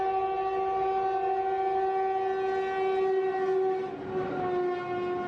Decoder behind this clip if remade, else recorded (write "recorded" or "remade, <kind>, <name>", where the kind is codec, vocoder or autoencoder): recorded